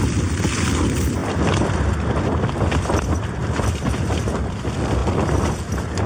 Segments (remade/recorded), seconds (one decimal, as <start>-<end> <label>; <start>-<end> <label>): 0.0-5.0 remade; 5.0-5.5 recorded; 5.5-6.1 remade